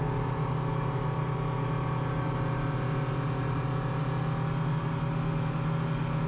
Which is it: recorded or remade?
recorded